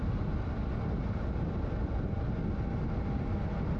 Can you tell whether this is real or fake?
real